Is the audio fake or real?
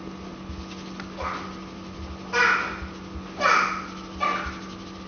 real